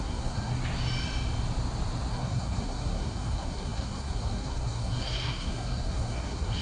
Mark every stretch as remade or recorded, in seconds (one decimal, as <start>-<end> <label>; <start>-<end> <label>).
0.0-0.6 remade; 0.6-2.1 recorded; 2.1-6.6 remade